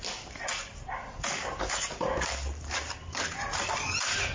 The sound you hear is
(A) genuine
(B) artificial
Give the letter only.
A